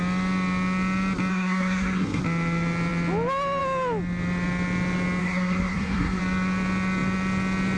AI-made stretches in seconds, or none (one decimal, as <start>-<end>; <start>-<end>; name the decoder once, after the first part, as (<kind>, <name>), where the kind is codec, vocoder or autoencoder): 1.3-2.2 (codec, SNAC); 5.2-6.2